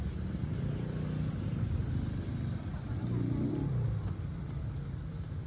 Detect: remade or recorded recorded